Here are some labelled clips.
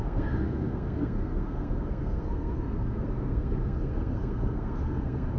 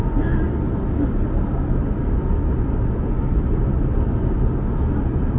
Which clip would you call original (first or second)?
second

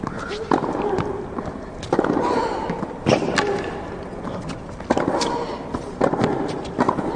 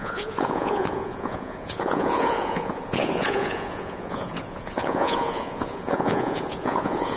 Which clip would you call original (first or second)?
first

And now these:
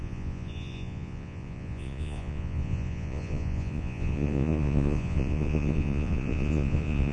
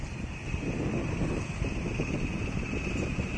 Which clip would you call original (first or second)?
second